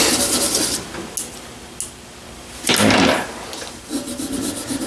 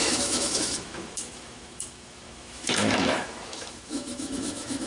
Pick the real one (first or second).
first